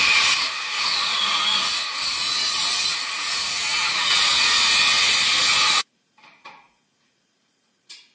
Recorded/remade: remade